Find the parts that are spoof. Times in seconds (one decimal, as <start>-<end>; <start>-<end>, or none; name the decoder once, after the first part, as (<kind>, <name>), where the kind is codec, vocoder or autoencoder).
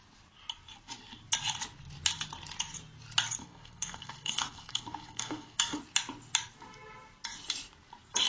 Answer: 3.4-5.8 (codec, SNAC)